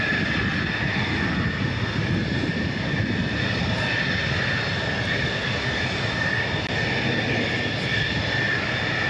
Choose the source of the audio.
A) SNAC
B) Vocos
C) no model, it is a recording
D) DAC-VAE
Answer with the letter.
C